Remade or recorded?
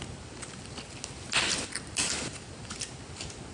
recorded